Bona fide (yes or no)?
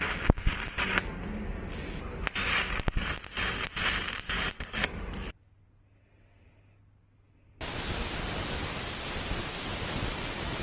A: yes